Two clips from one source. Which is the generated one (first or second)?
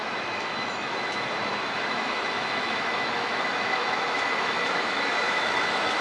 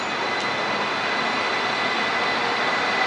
first